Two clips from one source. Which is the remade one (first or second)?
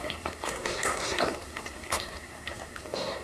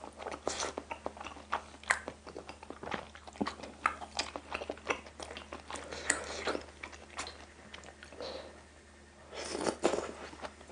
first